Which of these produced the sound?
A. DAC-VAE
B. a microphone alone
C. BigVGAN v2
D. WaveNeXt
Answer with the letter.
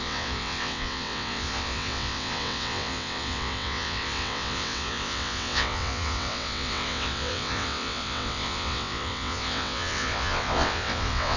D